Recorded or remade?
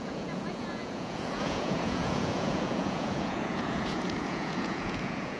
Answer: remade